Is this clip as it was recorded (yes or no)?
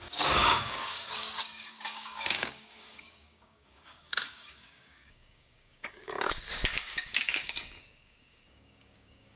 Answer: no